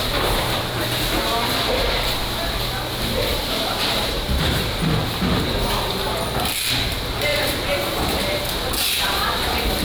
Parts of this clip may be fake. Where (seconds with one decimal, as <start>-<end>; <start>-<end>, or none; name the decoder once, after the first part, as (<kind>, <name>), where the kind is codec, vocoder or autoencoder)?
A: 0.0-0.8 (vocoder, BigVGAN v2); 3.3-4.6; 7.3-8.4